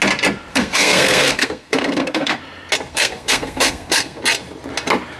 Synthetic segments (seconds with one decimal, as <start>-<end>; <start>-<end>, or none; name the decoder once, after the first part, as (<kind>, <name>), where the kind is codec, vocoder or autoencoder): 0.5-2.4 (codec, SNAC); 2.9-4.2